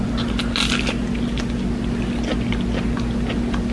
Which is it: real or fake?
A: real